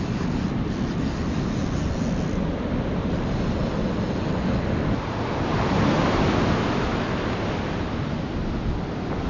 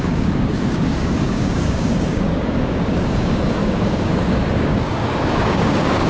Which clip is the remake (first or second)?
second